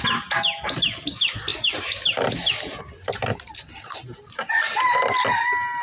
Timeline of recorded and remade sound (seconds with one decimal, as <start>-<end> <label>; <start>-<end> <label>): 0.0-3.3 recorded; 3.3-4.8 remade; 4.8-5.8 recorded